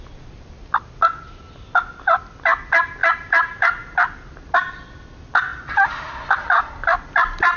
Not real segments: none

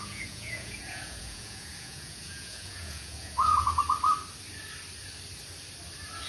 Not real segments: 0.0-3.8